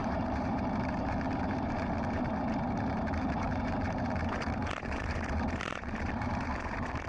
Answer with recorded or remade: remade